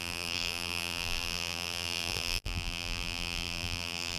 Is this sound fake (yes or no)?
yes